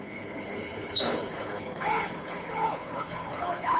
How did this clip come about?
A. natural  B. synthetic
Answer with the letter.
B